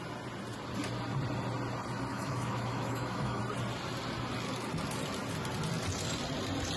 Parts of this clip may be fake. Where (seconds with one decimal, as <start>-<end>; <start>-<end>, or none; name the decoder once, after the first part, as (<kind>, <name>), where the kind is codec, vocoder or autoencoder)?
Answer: 2.1-3.4 (autoencoder, DAC-VAE)